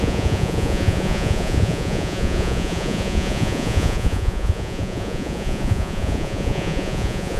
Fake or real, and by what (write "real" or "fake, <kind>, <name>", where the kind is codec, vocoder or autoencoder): fake, vocoder, Vocos